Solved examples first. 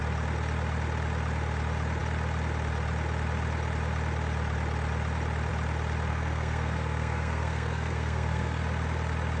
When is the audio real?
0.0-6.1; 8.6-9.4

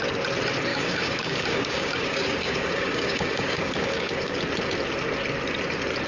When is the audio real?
0.0-0.7; 4.4-6.1